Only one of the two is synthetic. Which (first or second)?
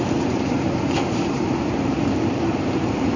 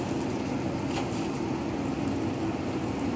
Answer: first